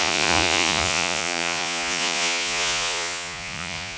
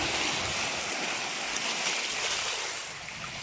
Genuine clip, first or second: second